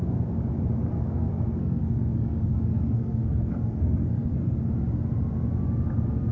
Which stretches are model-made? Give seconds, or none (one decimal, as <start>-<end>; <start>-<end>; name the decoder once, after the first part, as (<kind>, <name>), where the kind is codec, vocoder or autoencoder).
0.9-4.7 (codec, SNAC)